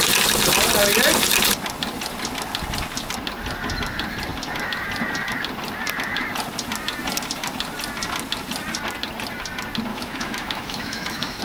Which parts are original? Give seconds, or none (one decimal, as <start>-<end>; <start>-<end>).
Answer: 0.0-9.9